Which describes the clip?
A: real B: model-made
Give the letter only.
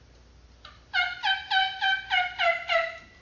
A